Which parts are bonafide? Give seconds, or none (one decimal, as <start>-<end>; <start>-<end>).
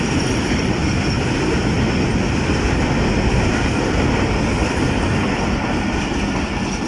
0.0-6.9